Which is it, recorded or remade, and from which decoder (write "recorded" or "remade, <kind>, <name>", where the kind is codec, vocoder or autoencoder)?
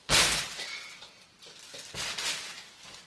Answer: recorded